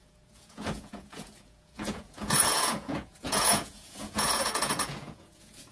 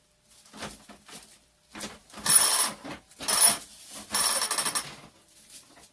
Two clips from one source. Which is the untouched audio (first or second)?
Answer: second